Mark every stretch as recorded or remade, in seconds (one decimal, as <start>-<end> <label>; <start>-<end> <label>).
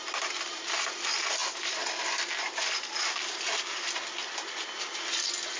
0.0-5.6 recorded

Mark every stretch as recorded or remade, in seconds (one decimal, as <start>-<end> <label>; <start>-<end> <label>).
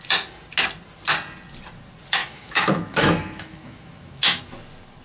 0.0-2.2 recorded; 2.2-4.4 remade; 4.4-5.0 recorded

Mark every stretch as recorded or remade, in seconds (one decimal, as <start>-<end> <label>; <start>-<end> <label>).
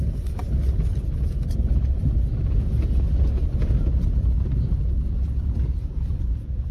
0.0-6.7 recorded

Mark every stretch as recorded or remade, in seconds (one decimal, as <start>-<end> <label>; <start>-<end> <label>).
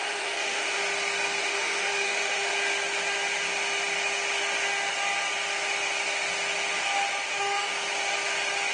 0.0-0.8 remade; 0.8-1.4 recorded; 1.4-2.5 remade; 2.5-7.3 recorded; 7.3-7.7 remade; 7.7-8.7 recorded